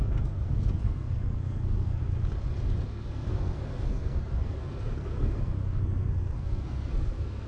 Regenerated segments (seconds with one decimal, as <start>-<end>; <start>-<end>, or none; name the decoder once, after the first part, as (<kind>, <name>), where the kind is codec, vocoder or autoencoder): 0.0-2.0 (codec, SNAC); 2.9-7.5